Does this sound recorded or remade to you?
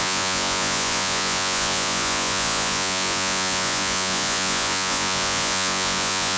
remade